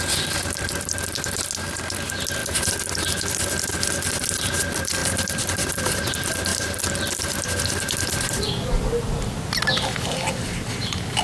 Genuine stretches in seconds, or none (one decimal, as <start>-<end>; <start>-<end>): 0.0-2.4; 3.0-5.0; 5.8-6.5; 8.7-11.2